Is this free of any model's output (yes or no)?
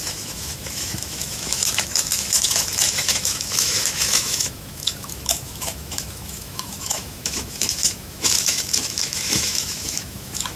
no